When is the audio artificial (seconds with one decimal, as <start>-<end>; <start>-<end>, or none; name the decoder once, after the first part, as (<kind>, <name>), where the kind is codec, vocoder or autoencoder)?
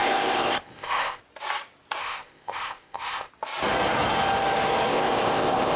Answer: 0.0-1.2 (codec, ZipCodec); 2.0-3.3; 4.9-5.8